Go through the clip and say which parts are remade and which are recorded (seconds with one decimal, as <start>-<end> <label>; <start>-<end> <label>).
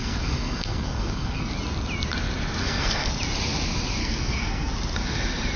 0.0-1.5 remade; 1.5-2.6 recorded; 2.6-3.1 remade; 3.1-4.0 recorded; 4.0-4.7 remade; 4.7-5.6 recorded